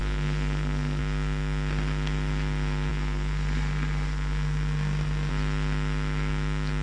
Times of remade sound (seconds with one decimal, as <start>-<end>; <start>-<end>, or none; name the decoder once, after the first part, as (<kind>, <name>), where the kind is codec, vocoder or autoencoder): 0.0-1.0 (codec, SNAC); 2.9-5.3